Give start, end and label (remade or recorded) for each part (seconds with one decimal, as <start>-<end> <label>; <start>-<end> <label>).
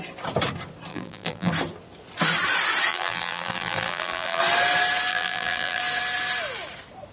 0.0-0.9 recorded; 0.9-1.5 remade; 1.5-2.9 recorded; 2.9-4.4 remade; 4.4-5.1 recorded; 5.1-5.8 remade; 5.8-7.1 recorded